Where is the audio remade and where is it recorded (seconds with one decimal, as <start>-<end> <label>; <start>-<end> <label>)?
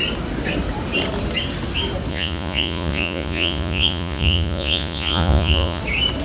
0.0-2.1 recorded; 2.1-5.8 remade; 5.8-6.2 recorded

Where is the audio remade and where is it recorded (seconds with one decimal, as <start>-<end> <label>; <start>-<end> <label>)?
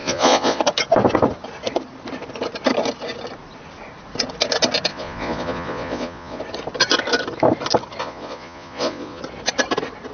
0.0-0.6 remade; 0.6-4.9 recorded; 4.9-6.4 remade; 6.4-8.0 recorded; 8.0-9.2 remade; 9.2-10.1 recorded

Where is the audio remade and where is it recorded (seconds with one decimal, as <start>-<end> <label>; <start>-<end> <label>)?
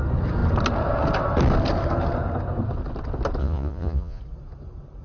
0.0-3.4 recorded; 3.4-4.2 remade; 4.2-5.0 recorded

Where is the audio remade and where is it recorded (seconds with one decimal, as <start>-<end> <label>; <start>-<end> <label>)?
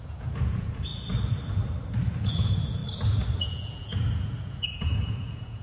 0.0-0.9 remade; 0.9-2.2 recorded; 2.2-2.8 remade; 2.8-3.4 recorded; 3.4-5.6 remade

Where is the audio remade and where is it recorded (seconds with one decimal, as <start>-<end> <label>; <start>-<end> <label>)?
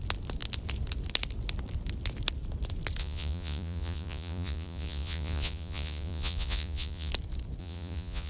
0.0-3.0 recorded; 3.0-7.1 remade; 7.1-7.6 recorded; 7.6-8.3 remade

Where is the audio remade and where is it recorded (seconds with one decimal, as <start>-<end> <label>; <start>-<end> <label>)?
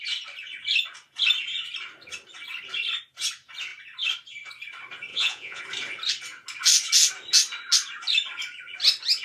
0.0-5.1 recorded; 5.1-5.6 remade; 5.6-9.2 recorded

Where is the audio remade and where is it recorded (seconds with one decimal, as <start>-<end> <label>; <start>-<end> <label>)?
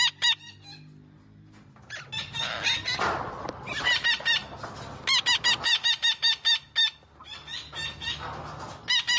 0.0-9.2 recorded